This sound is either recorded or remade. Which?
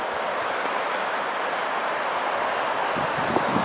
recorded